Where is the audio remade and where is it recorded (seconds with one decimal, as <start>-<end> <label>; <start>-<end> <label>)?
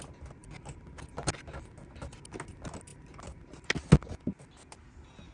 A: 0.0-5.3 recorded